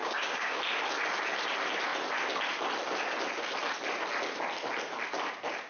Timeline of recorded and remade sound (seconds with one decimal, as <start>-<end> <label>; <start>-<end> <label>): 0.0-0.6 remade; 0.6-5.7 recorded